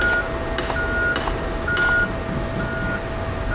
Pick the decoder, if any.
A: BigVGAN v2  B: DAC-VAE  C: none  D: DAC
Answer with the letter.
C